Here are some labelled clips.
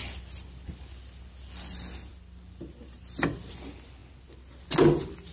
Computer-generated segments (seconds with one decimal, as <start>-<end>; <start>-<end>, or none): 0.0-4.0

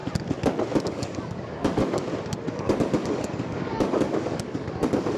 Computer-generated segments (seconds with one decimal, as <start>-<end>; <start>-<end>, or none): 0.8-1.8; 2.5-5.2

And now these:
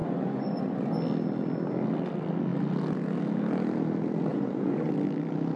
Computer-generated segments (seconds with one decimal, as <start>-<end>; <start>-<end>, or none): 0.0-0.9; 4.3-4.9

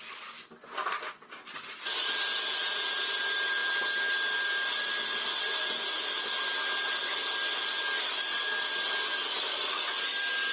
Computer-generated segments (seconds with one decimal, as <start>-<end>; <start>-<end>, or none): none

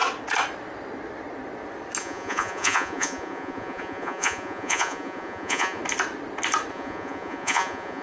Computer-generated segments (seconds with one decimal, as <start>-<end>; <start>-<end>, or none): 2.0-5.8; 6.7-8.0

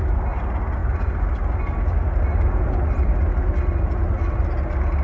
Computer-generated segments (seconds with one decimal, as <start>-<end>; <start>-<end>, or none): none

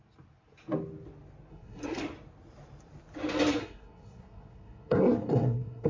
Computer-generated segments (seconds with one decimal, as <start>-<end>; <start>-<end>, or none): 1.5-2.0; 3.6-5.9

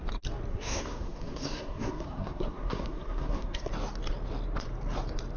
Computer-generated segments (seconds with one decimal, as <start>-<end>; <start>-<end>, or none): 0.5-3.7